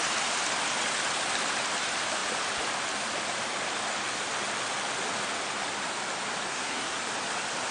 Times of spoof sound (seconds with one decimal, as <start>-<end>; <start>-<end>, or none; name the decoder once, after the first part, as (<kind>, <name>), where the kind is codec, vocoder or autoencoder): 6.5-7.0 (codec, SNAC)